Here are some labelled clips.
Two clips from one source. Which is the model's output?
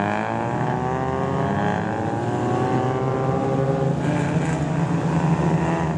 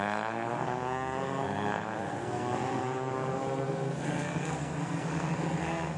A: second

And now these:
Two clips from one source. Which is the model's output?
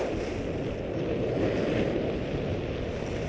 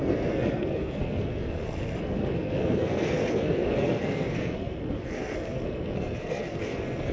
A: second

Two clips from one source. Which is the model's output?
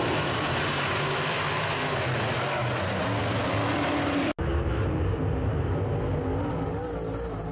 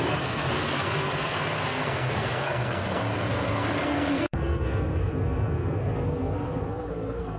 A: second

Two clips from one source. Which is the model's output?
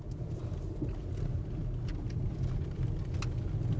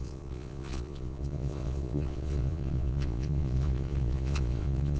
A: second